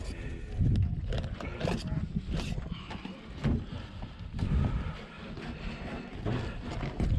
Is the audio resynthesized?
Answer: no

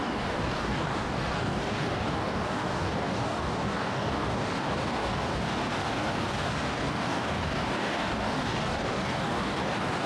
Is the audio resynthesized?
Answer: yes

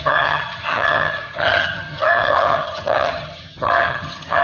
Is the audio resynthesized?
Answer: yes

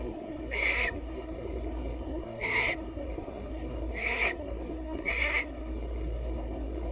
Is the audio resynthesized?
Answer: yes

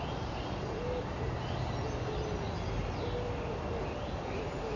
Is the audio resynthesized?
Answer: no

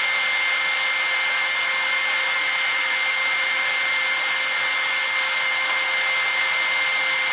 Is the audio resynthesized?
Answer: no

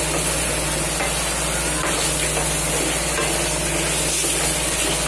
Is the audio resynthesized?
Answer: no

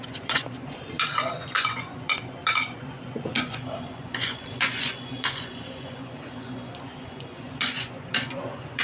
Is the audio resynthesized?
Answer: yes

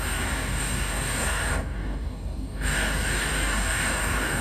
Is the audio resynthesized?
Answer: yes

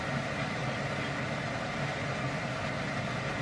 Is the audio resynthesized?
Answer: no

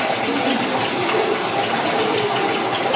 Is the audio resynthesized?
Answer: no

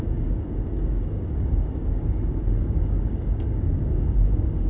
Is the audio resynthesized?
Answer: yes